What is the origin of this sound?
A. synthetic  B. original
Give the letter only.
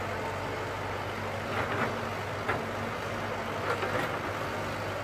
B